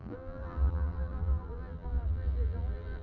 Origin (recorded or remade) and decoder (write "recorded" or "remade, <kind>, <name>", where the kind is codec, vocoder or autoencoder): remade, vocoder, BigVGAN v2